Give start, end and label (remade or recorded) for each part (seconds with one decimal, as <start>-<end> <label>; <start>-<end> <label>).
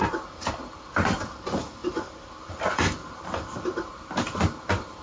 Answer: 0.0-1.8 recorded; 1.8-3.9 remade; 3.9-5.0 recorded